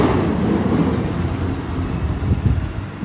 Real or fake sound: real